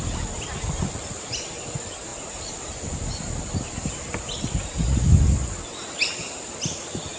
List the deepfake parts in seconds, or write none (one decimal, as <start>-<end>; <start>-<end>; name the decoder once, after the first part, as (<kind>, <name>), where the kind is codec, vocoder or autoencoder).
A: none